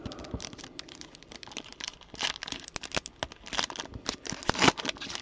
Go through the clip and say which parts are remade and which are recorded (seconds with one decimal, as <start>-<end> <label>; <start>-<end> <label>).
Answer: 0.0-5.2 recorded